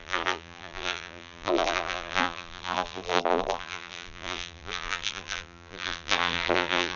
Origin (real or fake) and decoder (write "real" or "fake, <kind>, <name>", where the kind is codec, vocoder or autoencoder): fake, vocoder, BigVGAN v2